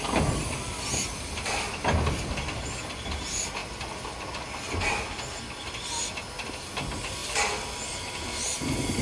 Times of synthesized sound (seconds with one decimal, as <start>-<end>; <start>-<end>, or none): none